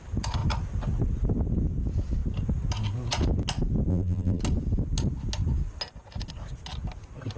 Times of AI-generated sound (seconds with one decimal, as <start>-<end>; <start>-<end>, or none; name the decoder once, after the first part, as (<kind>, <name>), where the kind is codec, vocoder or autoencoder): 3.9-4.4 (vocoder, BigVGAN v2)